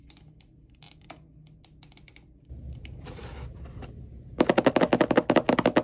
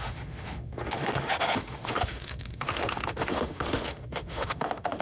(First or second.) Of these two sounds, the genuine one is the first